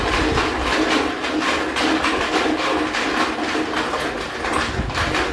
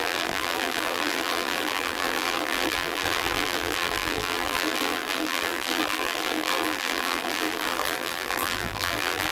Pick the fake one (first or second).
second